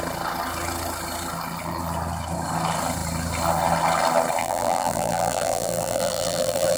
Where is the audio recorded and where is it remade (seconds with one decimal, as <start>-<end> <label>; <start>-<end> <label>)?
0.0-4.4 recorded; 4.4-6.8 remade